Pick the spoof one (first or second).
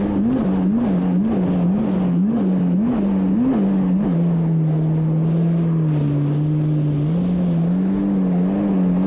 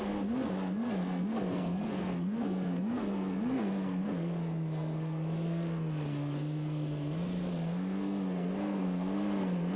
second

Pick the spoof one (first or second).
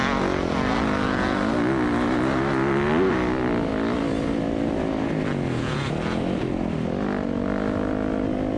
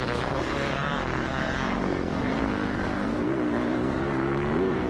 second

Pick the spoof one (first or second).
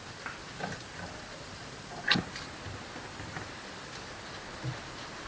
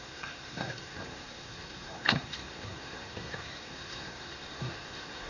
second